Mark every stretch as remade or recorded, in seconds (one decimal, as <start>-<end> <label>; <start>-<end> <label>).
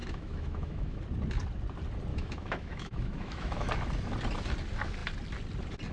0.0-1.0 remade; 1.0-2.1 recorded; 2.1-3.7 remade; 3.7-5.9 recorded